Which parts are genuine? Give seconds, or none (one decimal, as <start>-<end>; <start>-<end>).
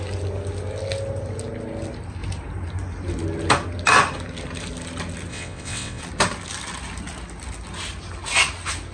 0.0-5.3; 6.0-8.9